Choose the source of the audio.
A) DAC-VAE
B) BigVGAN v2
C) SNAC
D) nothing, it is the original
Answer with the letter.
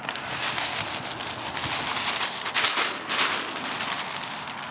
D